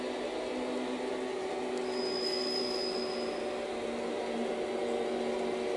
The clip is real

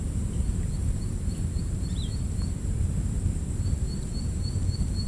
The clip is fake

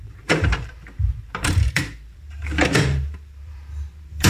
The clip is fake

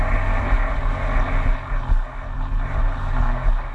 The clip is real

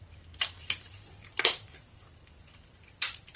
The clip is fake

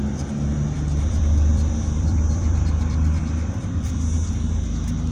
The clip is fake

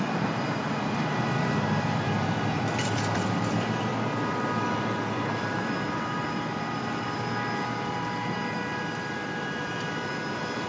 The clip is fake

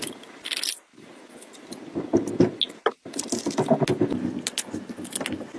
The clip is real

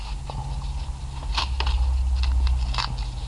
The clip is real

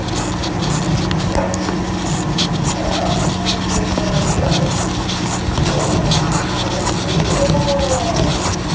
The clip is real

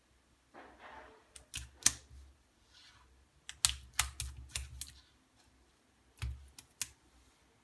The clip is real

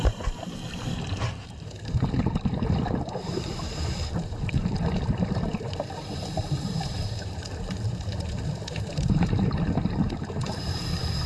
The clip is fake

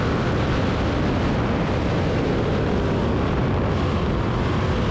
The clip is real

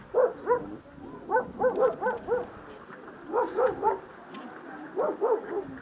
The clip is real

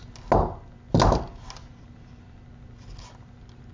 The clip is real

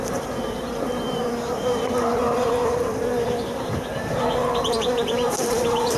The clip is fake